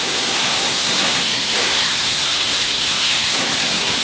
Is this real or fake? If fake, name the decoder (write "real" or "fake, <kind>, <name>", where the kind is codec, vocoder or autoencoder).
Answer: fake, codec, SNAC